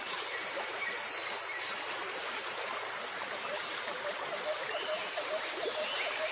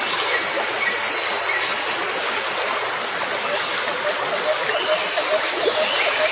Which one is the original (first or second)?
second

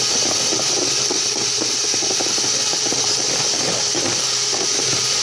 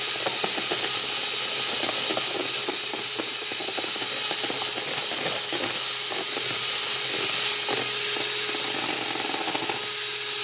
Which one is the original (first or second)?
second